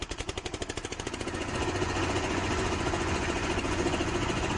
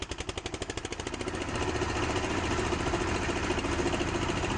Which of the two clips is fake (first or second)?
first